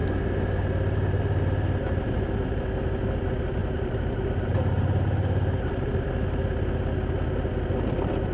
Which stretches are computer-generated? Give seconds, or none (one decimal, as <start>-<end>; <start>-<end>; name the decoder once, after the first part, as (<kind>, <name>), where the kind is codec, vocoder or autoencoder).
0.0-2.0 (vocoder, BigVGAN v2); 3.6-6.1